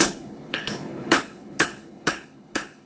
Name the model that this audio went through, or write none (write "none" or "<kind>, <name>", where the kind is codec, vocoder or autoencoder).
codec, HILCodec